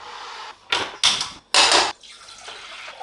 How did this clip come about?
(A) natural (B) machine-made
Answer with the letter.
A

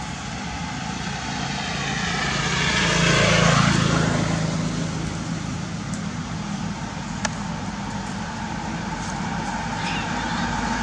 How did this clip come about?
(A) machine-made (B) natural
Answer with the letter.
B